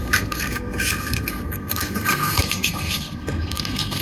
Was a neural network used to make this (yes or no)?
yes